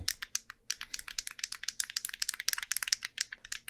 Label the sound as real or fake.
fake